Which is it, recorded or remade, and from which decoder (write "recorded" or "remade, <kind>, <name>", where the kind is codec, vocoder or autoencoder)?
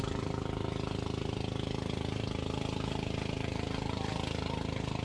recorded